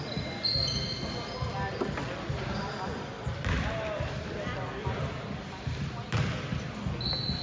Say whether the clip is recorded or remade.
recorded